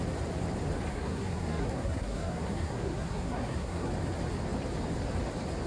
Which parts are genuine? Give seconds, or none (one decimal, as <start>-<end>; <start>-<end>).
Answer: 0.0-0.9; 3.9-5.7